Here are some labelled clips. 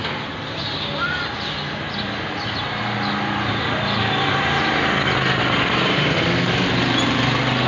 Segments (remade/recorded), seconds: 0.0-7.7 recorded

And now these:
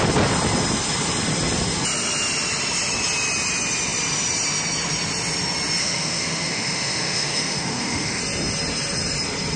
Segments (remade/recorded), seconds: 0.0-5.8 recorded; 5.8-8.2 remade; 8.2-9.6 recorded